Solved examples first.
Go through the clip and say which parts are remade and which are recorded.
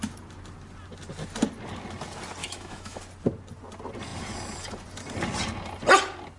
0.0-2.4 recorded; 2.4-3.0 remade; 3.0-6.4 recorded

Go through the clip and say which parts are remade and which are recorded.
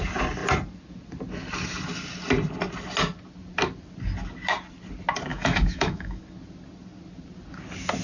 0.0-5.3 recorded; 5.3-6.2 remade; 6.2-8.0 recorded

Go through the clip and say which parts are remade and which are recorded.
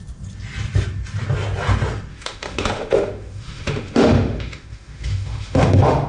0.0-2.1 recorded; 2.1-6.1 remade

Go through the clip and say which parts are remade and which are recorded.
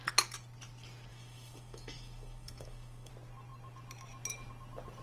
0.0-1.1 recorded; 1.1-3.1 remade; 3.1-5.0 recorded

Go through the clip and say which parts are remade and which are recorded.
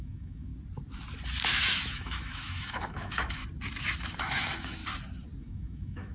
0.0-0.5 remade; 0.5-1.5 recorded; 1.5-3.4 remade; 3.4-4.2 recorded; 4.2-4.8 remade; 4.8-5.4 recorded; 5.4-6.1 remade